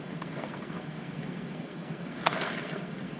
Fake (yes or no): yes